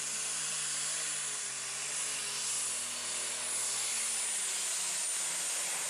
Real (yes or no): yes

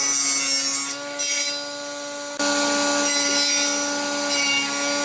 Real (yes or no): yes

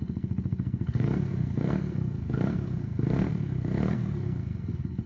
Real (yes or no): no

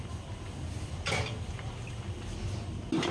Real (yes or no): yes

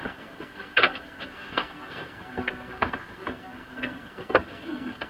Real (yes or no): no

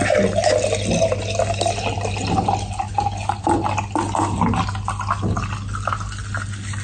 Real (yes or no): yes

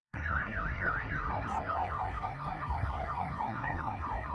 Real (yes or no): no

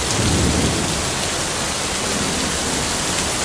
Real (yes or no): yes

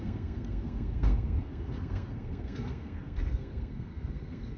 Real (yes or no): no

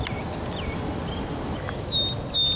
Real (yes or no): yes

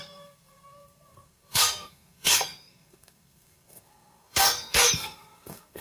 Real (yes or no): no